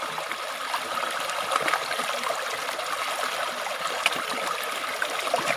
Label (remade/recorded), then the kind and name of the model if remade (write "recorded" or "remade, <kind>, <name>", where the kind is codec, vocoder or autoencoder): recorded